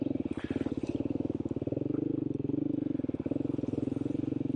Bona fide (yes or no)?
yes